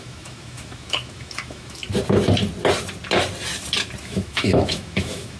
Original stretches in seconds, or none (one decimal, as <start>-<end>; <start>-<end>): 1.8-4.0